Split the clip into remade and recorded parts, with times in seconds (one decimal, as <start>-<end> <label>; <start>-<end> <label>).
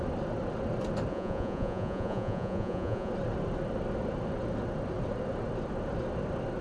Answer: 0.0-1.1 recorded; 1.1-3.1 remade; 3.1-6.6 recorded